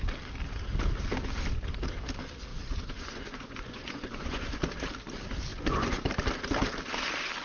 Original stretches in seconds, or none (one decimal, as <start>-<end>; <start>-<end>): 0.0-2.5; 4.6-5.5; 6.0-7.4